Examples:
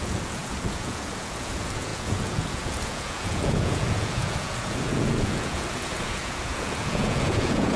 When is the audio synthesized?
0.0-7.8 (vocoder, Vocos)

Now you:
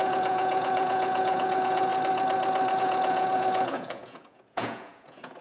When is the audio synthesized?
0.0-1.9 (vocoder, Vocos); 2.8-5.4

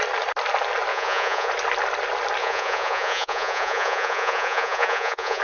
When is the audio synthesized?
0.9-1.5 (vocoder, Vocos); 2.4-5.4

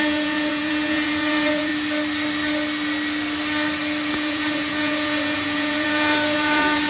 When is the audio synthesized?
0.0-1.7 (vocoder, Vocos); 4.1-6.9

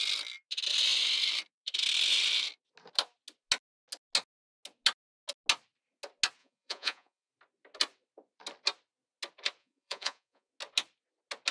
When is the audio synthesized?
6.4-7.3 (vocoder, Vocos); 9.6-10.5

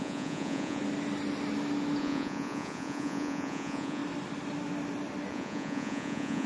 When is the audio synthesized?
0.0-0.8 (vocoder, Vocos); 2.0-4.0; 5.3-6.5